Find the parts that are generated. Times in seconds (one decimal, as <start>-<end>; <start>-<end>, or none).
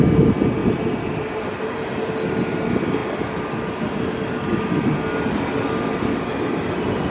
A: none